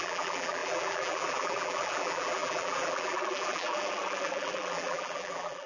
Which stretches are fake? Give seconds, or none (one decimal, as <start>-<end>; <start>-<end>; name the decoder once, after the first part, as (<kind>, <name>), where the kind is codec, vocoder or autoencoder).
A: 0.0-5.7 (vocoder, BigVGAN v2)